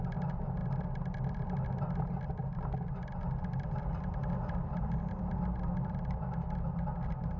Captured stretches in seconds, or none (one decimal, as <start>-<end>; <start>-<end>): 0.0-7.4